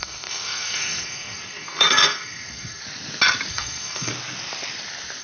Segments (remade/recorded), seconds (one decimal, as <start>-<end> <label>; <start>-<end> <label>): 0.0-2.8 remade; 2.8-3.5 recorded; 3.5-4.1 remade; 4.1-5.2 recorded